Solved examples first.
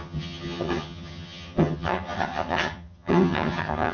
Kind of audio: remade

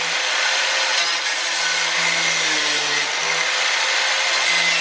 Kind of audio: recorded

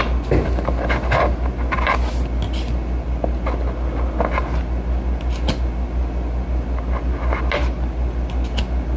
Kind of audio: recorded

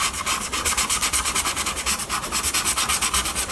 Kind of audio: recorded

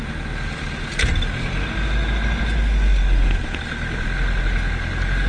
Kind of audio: recorded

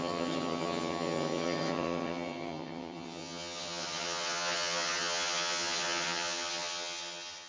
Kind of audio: remade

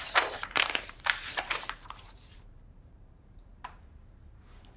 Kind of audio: remade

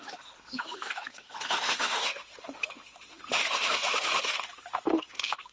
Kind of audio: remade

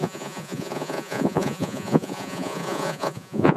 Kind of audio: remade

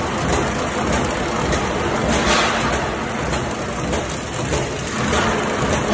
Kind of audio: recorded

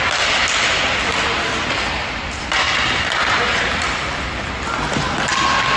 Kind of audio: recorded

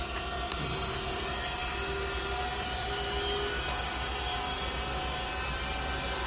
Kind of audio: recorded